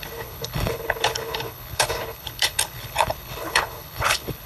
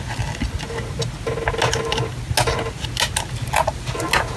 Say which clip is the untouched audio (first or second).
second